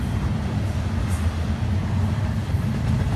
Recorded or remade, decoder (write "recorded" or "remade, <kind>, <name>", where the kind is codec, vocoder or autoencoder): recorded